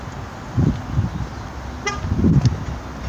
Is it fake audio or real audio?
real